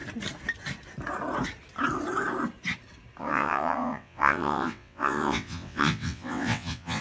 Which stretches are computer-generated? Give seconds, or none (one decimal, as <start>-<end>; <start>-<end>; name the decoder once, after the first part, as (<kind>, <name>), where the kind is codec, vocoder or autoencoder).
3.2-7.0 (vocoder, WaveNeXt)